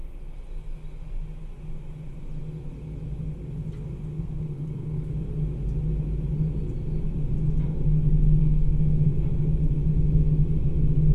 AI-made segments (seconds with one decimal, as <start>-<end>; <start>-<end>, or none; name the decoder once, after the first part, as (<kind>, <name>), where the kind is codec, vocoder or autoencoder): 4.1-5.1 (codec, SNAC); 8.4-9.1